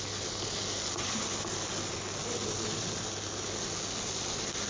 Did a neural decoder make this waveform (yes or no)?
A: no